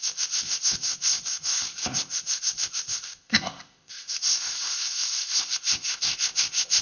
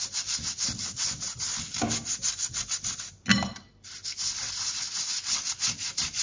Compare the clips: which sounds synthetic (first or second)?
first